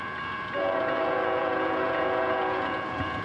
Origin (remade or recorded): remade